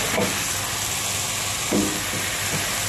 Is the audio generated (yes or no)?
no